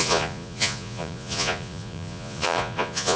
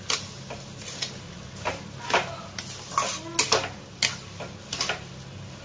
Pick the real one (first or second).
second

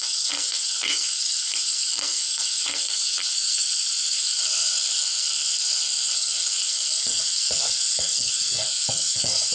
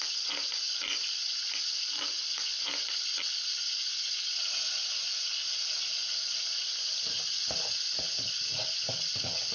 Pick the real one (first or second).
second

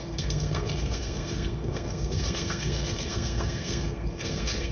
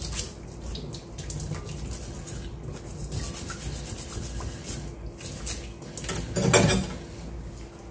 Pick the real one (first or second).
second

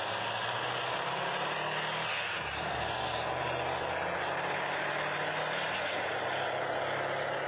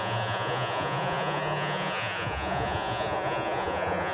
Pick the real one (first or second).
first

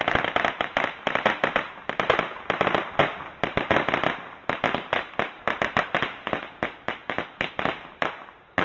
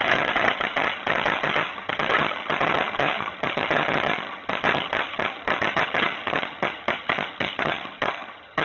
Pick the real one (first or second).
first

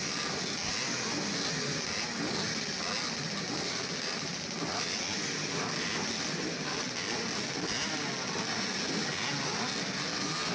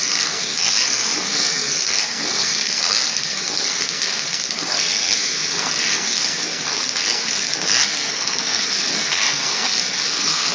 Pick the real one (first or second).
first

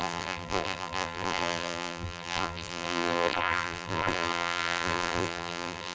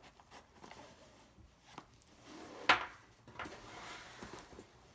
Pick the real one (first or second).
second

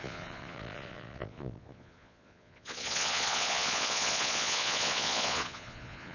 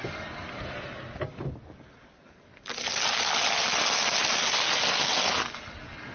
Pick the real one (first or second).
second